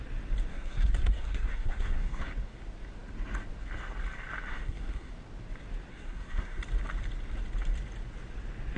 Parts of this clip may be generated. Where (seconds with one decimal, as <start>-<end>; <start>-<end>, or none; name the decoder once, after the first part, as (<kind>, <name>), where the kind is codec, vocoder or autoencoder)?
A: 0.5-2.3 (codec, SNAC); 4.5-5.1; 5.9-6.6